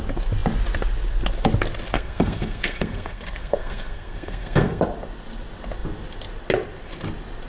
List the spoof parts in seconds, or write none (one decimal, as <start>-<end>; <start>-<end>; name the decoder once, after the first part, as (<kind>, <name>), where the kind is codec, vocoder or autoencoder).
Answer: 1.9-4.8 (codec, SNAC)